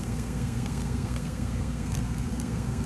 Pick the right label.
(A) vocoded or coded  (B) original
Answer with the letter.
A